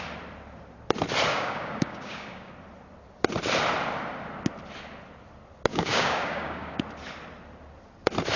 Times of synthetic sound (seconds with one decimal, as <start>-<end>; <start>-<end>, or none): 1.3-2.5; 5.7-6.8